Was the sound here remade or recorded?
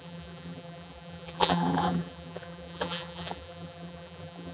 remade